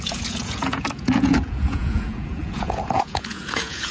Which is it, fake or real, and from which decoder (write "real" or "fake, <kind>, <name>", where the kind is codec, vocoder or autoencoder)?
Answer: fake, vocoder, Vocos